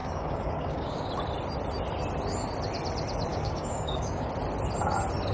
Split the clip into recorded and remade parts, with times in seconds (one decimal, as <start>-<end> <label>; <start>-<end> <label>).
0.0-1.1 remade; 1.1-3.3 recorded; 3.3-4.3 remade; 4.3-5.3 recorded